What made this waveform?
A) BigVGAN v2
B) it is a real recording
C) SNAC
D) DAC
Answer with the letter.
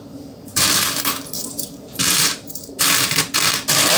A